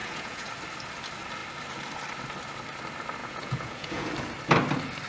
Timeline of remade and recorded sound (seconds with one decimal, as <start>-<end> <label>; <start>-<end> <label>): 0.0-0.5 remade; 0.5-3.2 recorded; 3.2-4.1 remade; 4.1-5.1 recorded